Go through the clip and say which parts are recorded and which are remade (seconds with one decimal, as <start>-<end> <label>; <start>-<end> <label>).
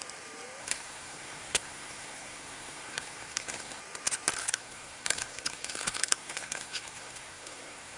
0.0-0.6 recorded; 0.6-3.8 remade; 3.8-4.4 recorded; 4.4-8.0 remade